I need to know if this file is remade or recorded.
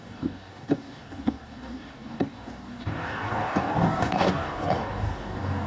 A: remade